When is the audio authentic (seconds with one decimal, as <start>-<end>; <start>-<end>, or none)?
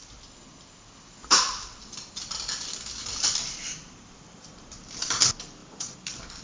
0.0-1.2; 2.1-3.0; 4.5-5.6